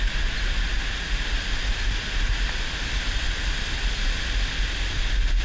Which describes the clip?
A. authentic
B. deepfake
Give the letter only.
A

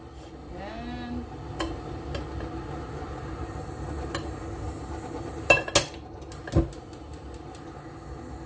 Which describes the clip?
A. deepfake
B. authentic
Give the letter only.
B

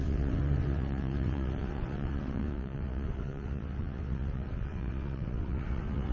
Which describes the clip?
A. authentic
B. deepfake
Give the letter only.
B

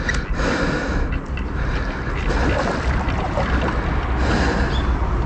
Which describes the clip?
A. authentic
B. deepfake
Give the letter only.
A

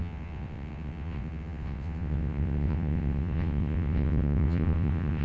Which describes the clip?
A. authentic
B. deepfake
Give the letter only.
B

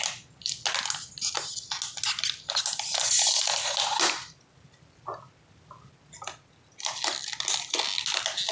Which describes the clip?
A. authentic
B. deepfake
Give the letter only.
A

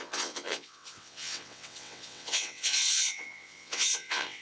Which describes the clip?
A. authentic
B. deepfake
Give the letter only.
B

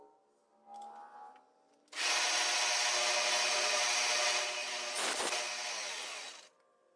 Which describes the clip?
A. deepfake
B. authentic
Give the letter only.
B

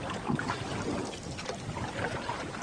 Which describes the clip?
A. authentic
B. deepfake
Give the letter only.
A